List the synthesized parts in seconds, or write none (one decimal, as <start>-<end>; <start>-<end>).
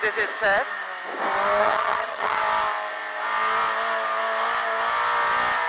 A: 1.6-2.4